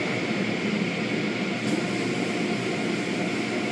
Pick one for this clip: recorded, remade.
recorded